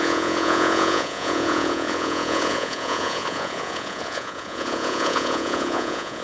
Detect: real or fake fake